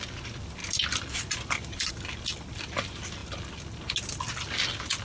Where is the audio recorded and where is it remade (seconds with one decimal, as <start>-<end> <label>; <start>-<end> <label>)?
0.0-5.0 recorded